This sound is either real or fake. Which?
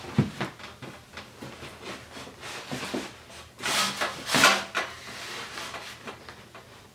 real